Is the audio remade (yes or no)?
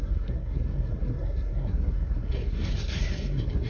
yes